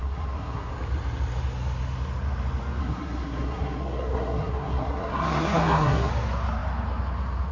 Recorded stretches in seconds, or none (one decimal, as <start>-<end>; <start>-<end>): 0.7-2.8; 6.1-7.5